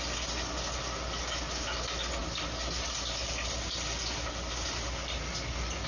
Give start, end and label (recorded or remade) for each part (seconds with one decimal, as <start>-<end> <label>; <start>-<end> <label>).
0.0-5.9 recorded